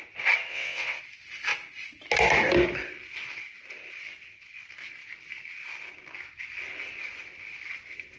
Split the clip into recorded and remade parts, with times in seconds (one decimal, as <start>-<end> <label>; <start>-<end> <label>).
0.0-0.5 recorded; 0.5-1.0 remade; 1.0-8.2 recorded